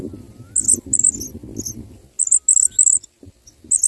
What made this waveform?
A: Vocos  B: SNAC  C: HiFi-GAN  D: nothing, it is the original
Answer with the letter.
D